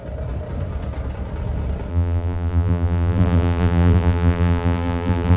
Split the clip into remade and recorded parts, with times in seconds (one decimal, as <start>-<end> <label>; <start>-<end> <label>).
0.0-1.9 recorded; 1.9-5.4 remade

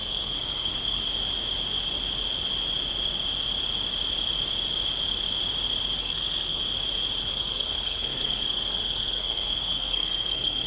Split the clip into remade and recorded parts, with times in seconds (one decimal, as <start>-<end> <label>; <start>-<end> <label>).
0.0-1.0 remade; 1.0-6.0 recorded; 6.0-6.6 remade; 6.6-7.2 recorded; 7.2-10.7 remade

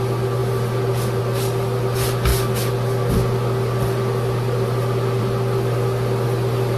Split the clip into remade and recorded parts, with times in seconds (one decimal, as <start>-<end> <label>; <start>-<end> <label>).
0.0-0.4 recorded; 0.4-1.2 remade; 1.2-2.3 recorded; 2.3-5.2 remade; 5.2-6.8 recorded